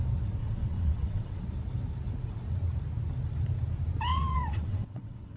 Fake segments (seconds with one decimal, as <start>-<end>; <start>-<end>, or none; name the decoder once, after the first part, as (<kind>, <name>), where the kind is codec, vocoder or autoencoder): 0.4-1.4 (vocoder, WaveNeXt); 4.1-5.4